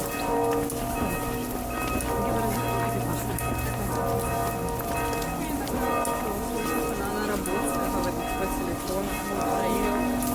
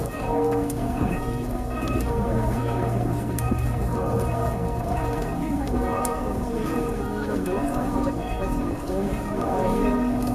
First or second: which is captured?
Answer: first